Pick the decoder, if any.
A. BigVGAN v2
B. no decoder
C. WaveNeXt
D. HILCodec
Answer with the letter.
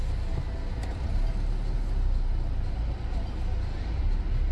B